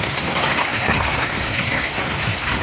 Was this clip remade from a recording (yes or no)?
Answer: yes